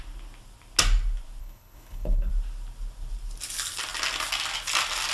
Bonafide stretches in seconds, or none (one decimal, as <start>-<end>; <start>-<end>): 0.0-1.4; 2.3-5.1